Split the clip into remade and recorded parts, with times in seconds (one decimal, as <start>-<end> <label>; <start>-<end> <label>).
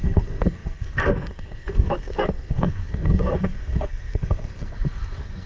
0.0-5.5 remade